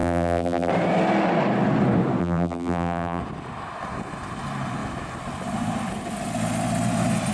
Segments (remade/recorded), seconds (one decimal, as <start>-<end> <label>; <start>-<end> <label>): 0.0-0.7 remade; 0.7-2.2 recorded; 2.2-3.2 remade; 3.2-7.3 recorded